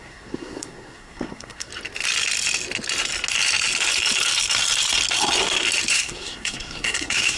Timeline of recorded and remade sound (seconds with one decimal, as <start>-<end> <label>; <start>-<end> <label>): 0.0-1.7 remade; 1.7-5.9 recorded; 5.9-7.4 remade